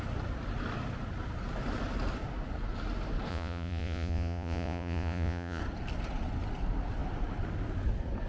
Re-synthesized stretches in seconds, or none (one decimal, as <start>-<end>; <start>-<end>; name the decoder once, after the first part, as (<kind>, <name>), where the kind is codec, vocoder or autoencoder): 3.3-5.6 (vocoder, Vocos)

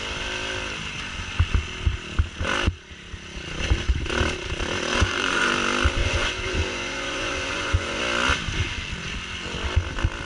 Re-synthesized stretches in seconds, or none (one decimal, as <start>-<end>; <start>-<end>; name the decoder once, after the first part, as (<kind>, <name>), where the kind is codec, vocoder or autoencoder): 4.9-5.5 (vocoder, Vocos); 6.0-8.0

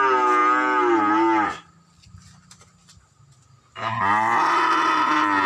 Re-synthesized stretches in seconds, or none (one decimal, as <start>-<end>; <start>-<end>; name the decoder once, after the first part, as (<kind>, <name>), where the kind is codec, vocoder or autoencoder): none

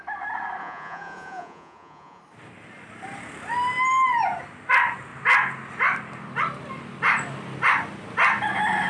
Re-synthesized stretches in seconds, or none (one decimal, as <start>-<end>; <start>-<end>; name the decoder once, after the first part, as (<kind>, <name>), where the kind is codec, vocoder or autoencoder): 0.6-2.2 (vocoder, Vocos)

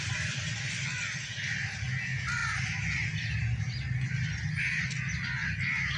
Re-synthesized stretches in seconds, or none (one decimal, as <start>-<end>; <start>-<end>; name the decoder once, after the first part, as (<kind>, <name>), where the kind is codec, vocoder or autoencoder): none

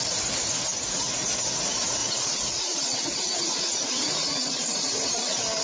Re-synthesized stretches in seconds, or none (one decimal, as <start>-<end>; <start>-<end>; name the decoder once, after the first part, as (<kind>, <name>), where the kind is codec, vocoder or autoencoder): 2.0-5.1 (vocoder, Vocos)

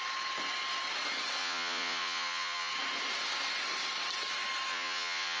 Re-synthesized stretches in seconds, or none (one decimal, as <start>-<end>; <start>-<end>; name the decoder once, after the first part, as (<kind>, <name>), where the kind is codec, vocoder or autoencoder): 1.4-2.7 (vocoder, Vocos); 4.7-5.4